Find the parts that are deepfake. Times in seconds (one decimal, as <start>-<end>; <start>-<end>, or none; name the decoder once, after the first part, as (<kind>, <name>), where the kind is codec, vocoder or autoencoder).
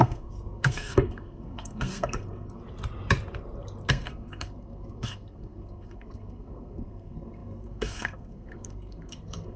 0.0-2.6 (codec, SNAC); 3.9-9.6